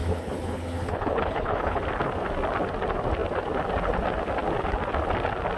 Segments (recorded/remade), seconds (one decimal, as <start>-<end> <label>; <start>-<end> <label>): 0.0-1.8 remade; 1.8-5.6 recorded